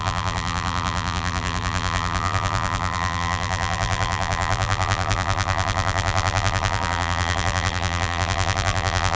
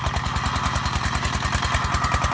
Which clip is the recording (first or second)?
second